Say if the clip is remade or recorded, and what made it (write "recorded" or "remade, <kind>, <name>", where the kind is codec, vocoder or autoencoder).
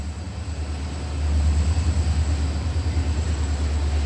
recorded